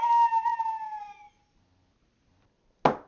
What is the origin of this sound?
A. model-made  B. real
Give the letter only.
B